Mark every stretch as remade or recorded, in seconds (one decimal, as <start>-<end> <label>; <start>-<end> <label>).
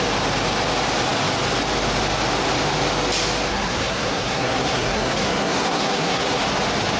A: 0.0-3.5 recorded; 3.5-6.4 remade; 6.4-7.0 recorded